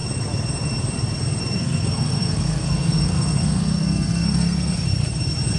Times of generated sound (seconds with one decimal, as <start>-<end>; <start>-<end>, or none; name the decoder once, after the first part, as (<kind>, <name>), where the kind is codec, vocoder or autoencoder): 1.6-4.7 (codec, SNAC)